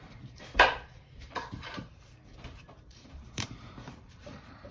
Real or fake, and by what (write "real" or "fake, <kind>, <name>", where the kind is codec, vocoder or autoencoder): fake, vocoder, BigVGAN v2